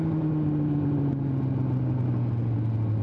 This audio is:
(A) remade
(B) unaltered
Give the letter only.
B